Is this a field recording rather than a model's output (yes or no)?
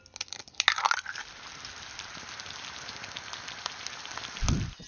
yes